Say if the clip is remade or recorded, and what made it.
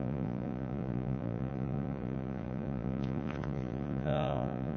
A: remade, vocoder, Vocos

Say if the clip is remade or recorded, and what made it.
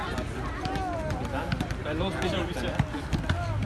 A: recorded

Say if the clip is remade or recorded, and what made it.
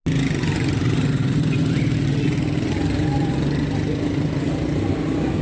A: recorded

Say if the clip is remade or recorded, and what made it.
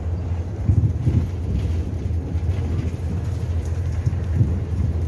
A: recorded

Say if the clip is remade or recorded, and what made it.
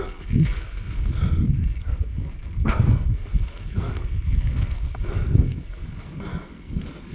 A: remade, codec, SNAC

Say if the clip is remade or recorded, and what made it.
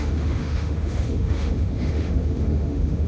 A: remade, autoencoder, DAC-VAE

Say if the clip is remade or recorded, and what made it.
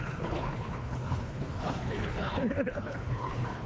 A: remade, codec, HILCodec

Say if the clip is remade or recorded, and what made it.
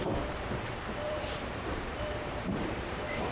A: remade, vocoder, BigVGAN v2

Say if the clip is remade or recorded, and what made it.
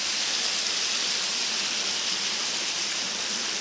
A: recorded